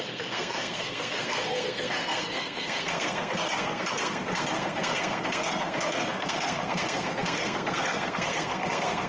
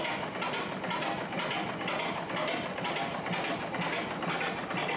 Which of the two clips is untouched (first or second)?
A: second